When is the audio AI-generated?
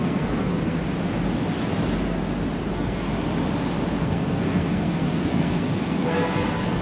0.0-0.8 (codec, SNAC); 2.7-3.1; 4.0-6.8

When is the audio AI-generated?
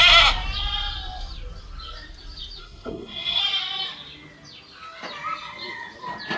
2.6-3.4 (codec, SNAC)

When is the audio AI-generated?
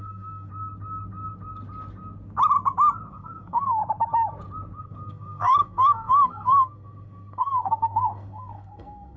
0.0-0.5 (codec, SNAC); 3.1-3.8; 4.8-9.2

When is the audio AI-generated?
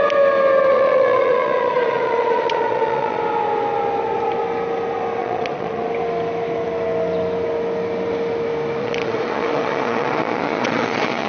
0.7-3.2 (vocoder, Vocos); 5.2-5.9; 8.8-11.3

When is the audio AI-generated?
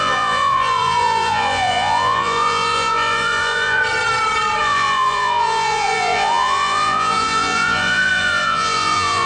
0.0-3.8 (vocoder, Vocos); 4.6-9.3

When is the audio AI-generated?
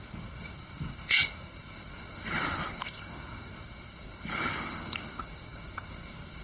0.0-6.4 (codec, HILCodec)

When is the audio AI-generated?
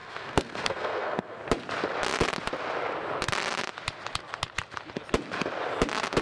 0.0-1.4 (codec, SNAC)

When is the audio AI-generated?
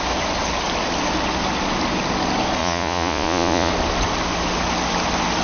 2.6-3.7 (vocoder, Vocos)